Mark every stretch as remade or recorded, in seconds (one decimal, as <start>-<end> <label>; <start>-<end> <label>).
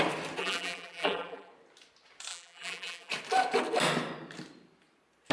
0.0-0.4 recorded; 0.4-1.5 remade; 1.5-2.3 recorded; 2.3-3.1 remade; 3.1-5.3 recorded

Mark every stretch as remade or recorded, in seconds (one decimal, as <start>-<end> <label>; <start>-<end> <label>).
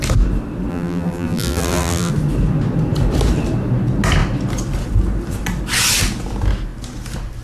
0.0-0.7 recorded; 0.7-2.1 remade; 2.1-7.4 recorded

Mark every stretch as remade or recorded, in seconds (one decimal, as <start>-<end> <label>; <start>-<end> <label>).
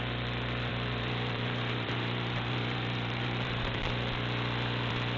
0.0-0.7 recorded; 0.7-3.8 remade; 3.8-5.2 recorded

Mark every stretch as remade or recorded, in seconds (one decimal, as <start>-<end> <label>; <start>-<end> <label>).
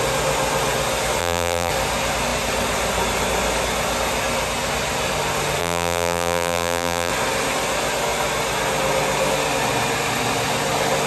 0.0-1.2 recorded; 1.2-1.7 remade; 1.7-5.6 recorded; 5.6-7.1 remade; 7.1-11.1 recorded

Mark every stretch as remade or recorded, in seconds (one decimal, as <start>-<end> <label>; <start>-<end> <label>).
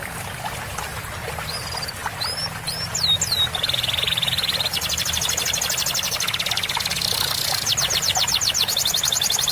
0.0-9.5 recorded